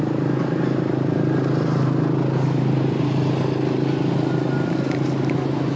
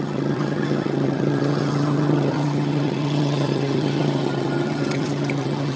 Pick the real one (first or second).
first